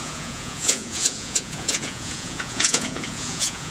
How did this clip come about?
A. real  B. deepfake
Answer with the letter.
B